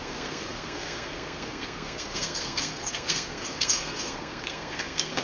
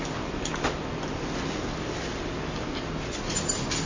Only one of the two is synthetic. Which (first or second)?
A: first